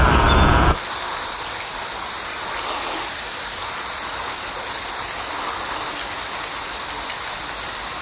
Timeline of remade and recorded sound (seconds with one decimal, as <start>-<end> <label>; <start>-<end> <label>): 0.0-8.0 recorded